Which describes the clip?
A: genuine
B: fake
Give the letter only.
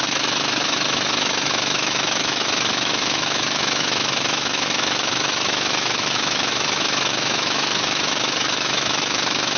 B